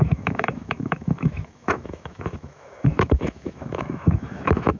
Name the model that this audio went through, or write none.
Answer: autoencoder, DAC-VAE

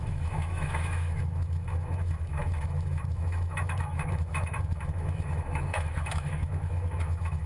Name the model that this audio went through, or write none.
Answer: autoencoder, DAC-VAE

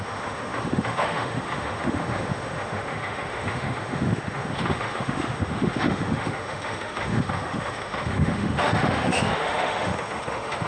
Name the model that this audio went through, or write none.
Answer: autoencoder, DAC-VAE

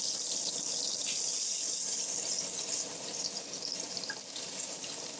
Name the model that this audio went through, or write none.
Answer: none